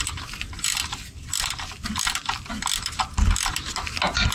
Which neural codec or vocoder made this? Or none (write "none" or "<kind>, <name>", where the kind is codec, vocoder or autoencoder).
none